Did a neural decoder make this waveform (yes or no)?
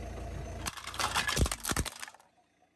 no